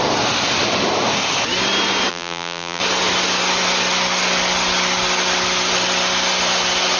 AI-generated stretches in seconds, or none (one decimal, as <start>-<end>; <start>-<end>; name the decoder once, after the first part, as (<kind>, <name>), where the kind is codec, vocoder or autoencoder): 2.1-2.8 (vocoder, BigVGAN v2)